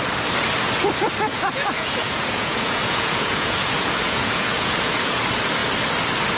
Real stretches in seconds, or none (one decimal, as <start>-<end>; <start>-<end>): 0.0-1.3; 5.1-6.4